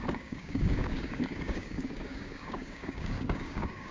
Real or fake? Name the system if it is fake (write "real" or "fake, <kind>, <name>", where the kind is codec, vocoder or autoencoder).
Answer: fake, codec, DAC